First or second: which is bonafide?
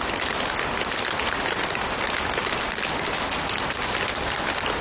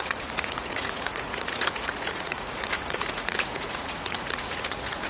first